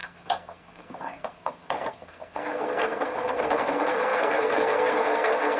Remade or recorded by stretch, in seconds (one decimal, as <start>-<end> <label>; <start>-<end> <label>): 0.0-5.6 remade